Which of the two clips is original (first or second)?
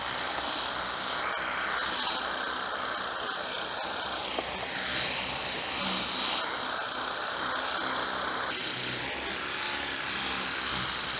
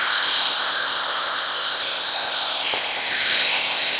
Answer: first